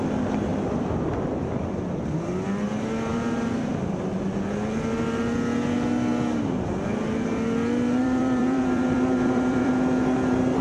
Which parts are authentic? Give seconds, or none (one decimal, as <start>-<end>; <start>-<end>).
0.0-0.5; 1.7-3.1; 3.7-8.0; 9.7-10.6